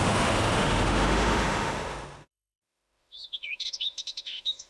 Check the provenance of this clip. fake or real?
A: fake